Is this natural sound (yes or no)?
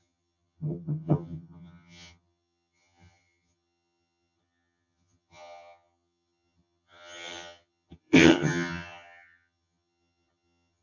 no